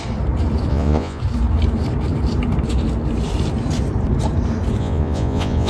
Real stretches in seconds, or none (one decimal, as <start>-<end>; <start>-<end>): 0.0-0.7; 1.2-4.8

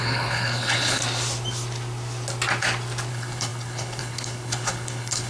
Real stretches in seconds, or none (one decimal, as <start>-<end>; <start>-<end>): 1.0-3.1